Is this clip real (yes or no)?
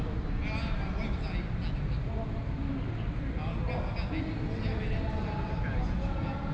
yes